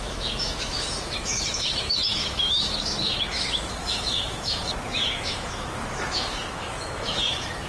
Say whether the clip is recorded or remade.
remade